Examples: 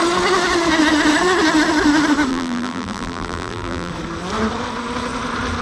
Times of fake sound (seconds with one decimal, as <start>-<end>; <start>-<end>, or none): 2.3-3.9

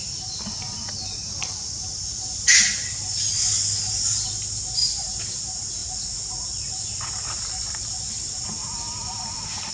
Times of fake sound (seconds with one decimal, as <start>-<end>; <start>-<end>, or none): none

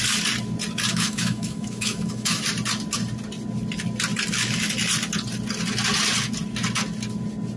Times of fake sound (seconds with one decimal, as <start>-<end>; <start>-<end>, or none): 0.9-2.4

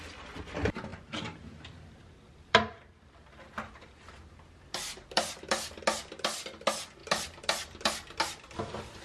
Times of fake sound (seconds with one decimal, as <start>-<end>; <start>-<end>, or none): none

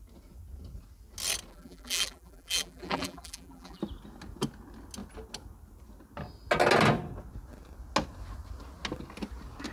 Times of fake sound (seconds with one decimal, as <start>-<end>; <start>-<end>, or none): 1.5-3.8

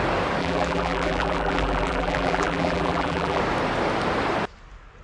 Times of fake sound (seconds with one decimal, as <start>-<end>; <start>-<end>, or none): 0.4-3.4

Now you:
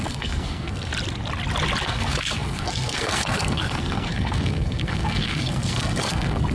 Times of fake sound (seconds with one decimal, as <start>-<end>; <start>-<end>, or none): 0.0-0.9; 1.8-6.5